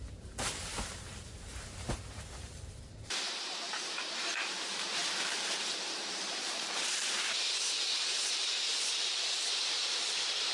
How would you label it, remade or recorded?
remade